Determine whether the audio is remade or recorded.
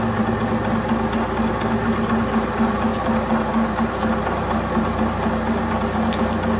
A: recorded